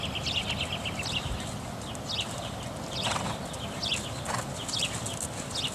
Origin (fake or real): real